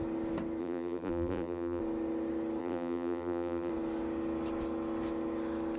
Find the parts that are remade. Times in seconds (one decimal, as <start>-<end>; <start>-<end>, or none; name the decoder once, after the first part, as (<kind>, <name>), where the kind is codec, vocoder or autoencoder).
0.6-1.8 (vocoder, BigVGAN v2); 2.6-3.7